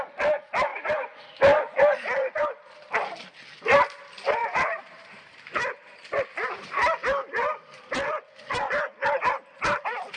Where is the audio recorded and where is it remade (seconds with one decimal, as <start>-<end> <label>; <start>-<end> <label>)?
0.0-0.7 recorded; 0.7-1.2 remade; 1.2-4.4 recorded; 4.4-5.5 remade; 5.5-10.2 recorded